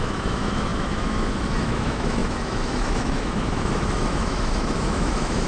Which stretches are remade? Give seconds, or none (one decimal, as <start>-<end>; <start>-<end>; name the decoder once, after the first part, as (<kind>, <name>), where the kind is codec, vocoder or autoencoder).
0.0-5.5 (autoencoder, DAC-VAE)